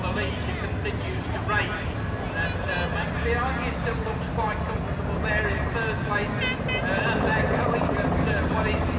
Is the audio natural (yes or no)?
yes